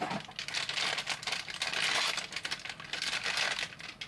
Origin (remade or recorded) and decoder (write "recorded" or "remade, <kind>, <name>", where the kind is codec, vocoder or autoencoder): recorded